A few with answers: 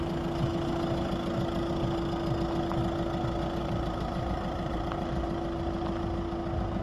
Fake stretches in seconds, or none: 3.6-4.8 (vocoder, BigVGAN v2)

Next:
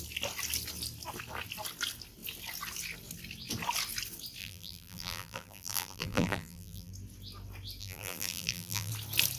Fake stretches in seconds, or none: 4.4-6.9 (vocoder, BigVGAN v2); 7.8-8.9

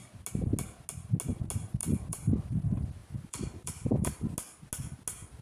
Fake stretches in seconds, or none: 1.8-2.4 (vocoder, BigVGAN v2); 3.0-4.1

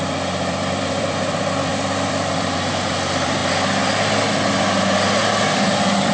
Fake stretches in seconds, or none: 0.0-3.4 (vocoder, BigVGAN v2)

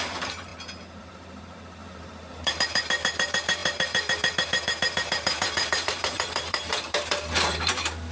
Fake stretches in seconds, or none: 0.0-0.5 (vocoder, BigVGAN v2); 1.0-8.1

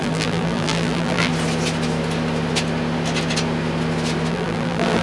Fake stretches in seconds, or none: 0.0-1.3 (vocoder, BigVGAN v2); 4.3-5.0

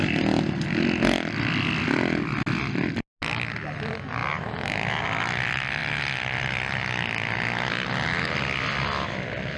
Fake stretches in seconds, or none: none